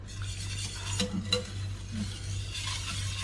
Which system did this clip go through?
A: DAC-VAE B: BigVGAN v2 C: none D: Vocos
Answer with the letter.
C